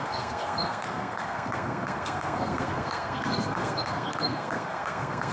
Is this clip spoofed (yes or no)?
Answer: yes